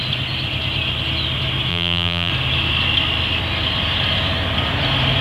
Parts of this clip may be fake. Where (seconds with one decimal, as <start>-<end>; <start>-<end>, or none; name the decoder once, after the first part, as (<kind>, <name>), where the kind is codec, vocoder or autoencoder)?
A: 1.7-2.3 (vocoder, BigVGAN v2)